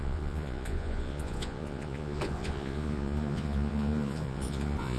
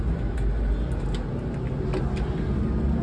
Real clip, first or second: second